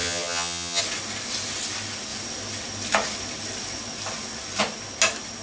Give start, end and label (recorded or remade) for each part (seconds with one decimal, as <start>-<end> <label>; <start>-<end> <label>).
0.0-0.8 remade; 0.8-5.4 recorded